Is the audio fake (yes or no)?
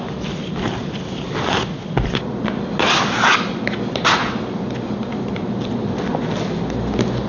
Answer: no